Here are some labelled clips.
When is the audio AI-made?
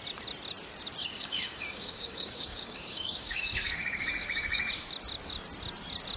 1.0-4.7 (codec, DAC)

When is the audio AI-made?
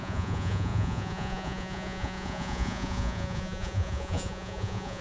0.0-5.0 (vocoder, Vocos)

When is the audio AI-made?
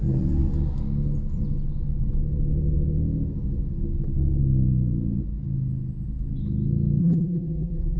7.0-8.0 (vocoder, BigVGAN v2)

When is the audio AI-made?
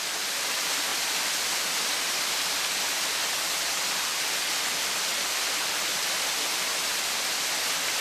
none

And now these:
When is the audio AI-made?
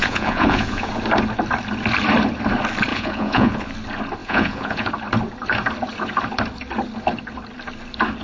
0.0-0.9 (vocoder, Vocos); 2.9-3.7; 4.2-4.9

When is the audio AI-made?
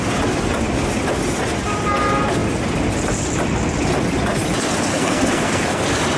4.9-5.8 (codec, SNAC)